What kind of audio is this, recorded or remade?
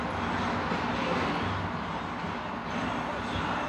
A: recorded